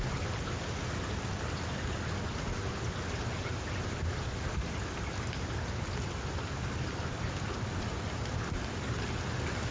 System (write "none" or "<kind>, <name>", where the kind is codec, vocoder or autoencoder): none